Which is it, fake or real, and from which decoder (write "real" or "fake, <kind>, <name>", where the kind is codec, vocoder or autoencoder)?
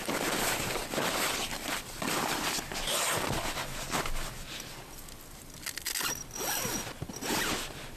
real